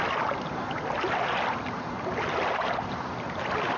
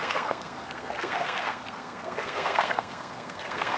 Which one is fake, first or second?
second